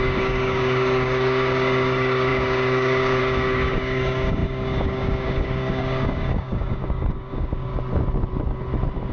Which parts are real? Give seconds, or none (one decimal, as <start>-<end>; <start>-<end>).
7.7-9.1